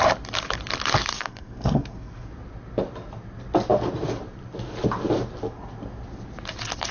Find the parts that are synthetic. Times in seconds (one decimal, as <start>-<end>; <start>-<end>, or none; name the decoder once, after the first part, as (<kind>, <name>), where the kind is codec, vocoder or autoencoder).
1.1-2.3 (codec, SNAC)